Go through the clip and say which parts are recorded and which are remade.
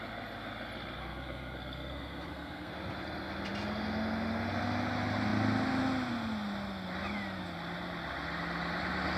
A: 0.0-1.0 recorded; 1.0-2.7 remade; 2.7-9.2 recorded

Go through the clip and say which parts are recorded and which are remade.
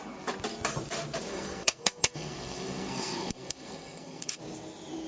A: 0.0-1.3 recorded; 1.3-4.4 remade; 4.4-5.1 recorded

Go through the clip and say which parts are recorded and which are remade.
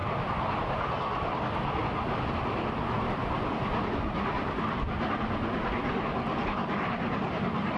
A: 0.0-7.8 recorded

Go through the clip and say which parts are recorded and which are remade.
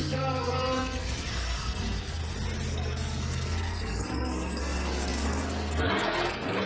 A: 0.0-2.2 remade; 2.2-2.7 recorded; 2.7-6.7 remade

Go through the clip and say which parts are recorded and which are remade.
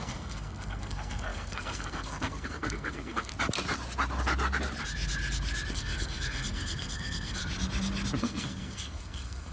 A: 0.0-3.3 remade; 3.3-5.7 recorded; 5.7-7.4 remade; 7.4-8.2 recorded; 8.2-9.5 remade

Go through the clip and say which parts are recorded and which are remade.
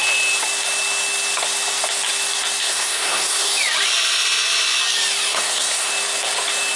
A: 0.0-2.6 recorded; 2.6-3.5 remade; 3.5-5.3 recorded; 5.3-5.9 remade; 5.9-6.8 recorded